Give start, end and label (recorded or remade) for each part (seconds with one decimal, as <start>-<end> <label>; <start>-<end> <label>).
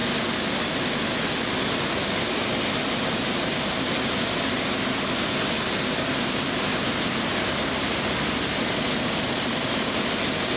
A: 0.0-10.6 recorded